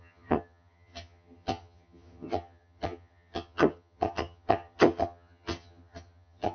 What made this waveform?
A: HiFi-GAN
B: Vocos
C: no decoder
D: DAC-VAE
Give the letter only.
A